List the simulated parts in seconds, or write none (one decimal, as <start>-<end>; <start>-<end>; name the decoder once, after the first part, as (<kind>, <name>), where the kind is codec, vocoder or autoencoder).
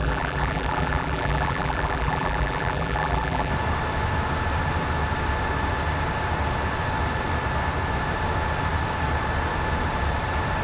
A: 0.0-3.5 (vocoder, BigVGAN v2)